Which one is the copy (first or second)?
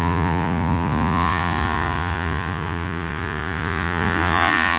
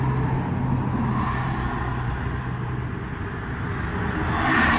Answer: first